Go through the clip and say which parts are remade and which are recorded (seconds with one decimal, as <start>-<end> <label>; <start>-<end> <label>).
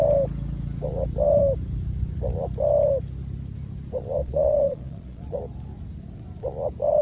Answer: 0.0-4.2 recorded; 4.2-5.4 remade; 5.4-7.0 recorded